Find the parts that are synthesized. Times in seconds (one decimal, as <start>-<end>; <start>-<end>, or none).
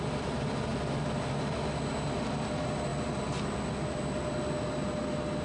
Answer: none